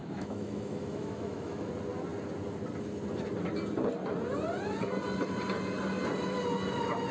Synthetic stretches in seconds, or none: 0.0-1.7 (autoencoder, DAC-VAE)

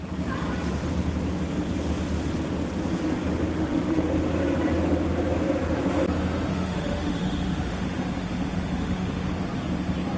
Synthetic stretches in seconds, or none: 3.5-4.1 (autoencoder, DAC-VAE); 6.5-9.3

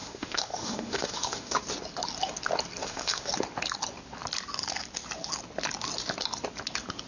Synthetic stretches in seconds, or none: 0.0-1.6 (autoencoder, DAC-VAE); 2.8-3.3

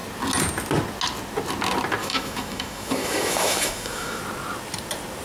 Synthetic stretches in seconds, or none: 2.0-4.2 (autoencoder, DAC-VAE)

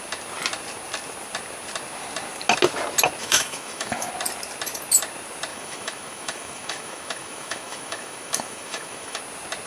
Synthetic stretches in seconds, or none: 3.2-4.1 (autoencoder, DAC-VAE); 5.5-9.2

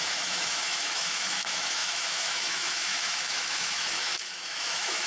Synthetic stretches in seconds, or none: 0.0-5.1 (autoencoder, DAC-VAE)

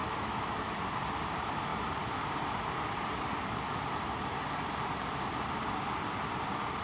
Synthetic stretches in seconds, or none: 0.0-0.7 (autoencoder, DAC-VAE)

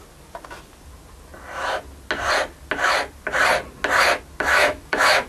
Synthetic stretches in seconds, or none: 4.5-5.3 (autoencoder, DAC-VAE)